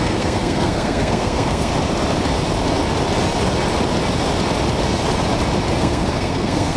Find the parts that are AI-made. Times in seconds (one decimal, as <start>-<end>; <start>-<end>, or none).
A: 0.0-1.7; 5.8-6.8